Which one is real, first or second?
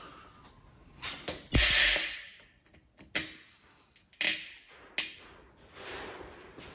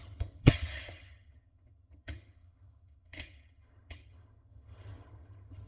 first